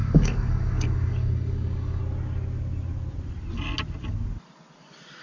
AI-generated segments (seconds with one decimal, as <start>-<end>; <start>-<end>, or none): 0.0-2.0